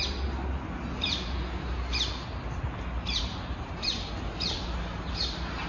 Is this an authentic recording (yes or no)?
yes